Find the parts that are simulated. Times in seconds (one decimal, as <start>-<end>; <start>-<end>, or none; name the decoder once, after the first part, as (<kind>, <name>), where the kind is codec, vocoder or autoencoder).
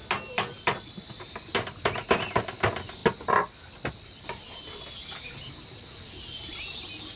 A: none